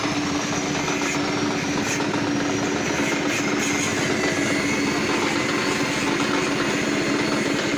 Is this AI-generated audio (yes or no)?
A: no